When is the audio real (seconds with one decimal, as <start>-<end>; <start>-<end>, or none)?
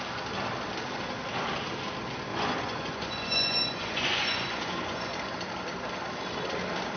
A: 0.0-2.3; 5.1-7.0